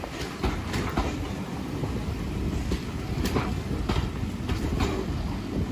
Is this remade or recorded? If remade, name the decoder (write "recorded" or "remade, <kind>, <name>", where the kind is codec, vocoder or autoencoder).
recorded